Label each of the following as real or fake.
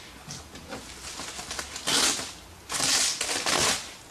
real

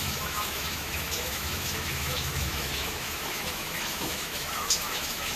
fake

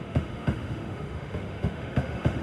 fake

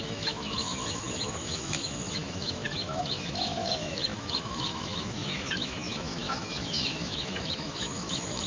fake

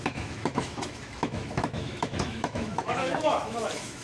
fake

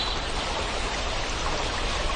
real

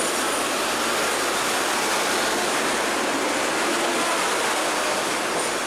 real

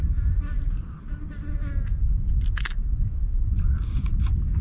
real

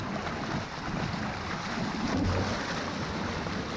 real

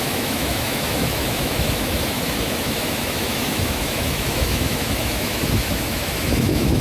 fake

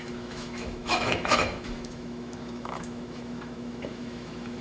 fake